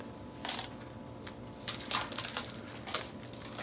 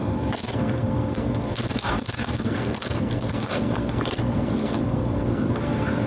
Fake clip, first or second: second